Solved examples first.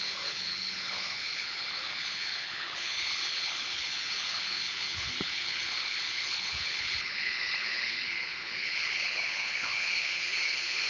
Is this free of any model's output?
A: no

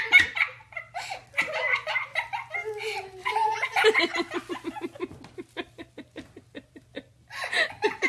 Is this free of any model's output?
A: yes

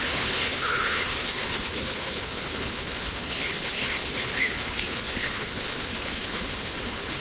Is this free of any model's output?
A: no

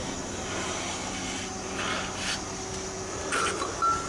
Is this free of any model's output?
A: yes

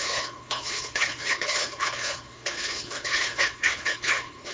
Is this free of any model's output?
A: no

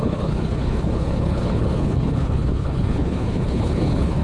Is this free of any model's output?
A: no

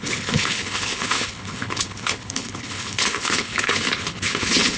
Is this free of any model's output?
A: no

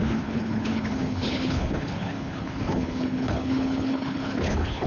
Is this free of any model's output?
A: no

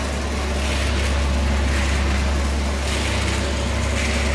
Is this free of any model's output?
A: yes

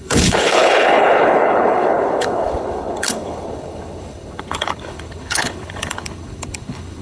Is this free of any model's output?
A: no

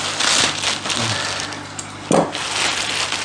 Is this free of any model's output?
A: yes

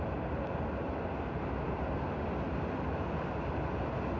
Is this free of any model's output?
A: yes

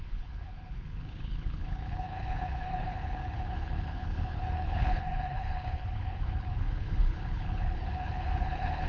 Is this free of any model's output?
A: no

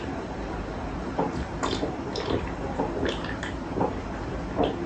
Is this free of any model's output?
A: yes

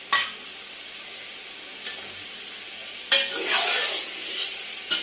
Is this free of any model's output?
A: yes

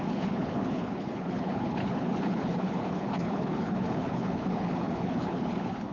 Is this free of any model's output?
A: no